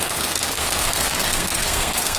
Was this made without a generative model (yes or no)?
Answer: no